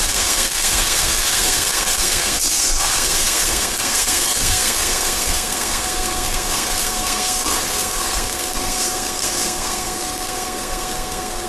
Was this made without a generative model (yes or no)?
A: no